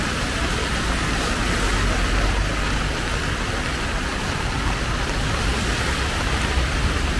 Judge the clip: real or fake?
real